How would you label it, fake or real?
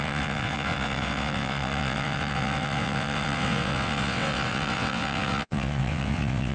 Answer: fake